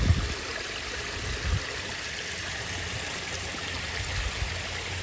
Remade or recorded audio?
recorded